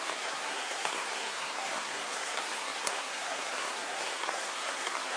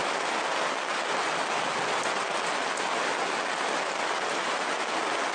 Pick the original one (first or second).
second